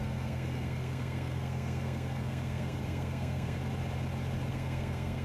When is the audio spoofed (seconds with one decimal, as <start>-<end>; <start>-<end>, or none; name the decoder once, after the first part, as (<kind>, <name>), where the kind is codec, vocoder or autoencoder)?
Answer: 0.0-3.6 (codec, SNAC); 4.5-5.2